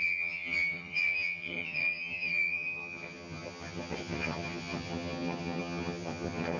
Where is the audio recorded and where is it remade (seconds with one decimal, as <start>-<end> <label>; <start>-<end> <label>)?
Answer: 0.0-6.6 remade